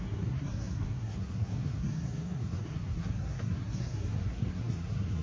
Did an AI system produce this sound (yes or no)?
yes